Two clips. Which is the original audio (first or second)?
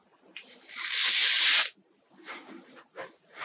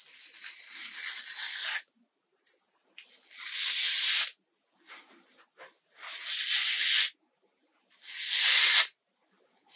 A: second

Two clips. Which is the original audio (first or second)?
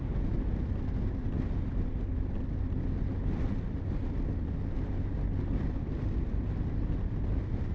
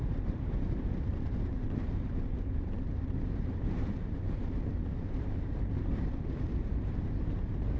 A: first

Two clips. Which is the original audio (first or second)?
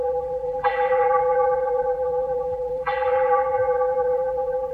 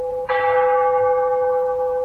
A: second